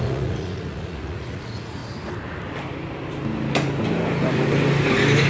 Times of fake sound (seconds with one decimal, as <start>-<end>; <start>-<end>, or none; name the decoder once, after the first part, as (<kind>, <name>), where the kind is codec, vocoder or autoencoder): 0.0-1.8 (vocoder, Vocos)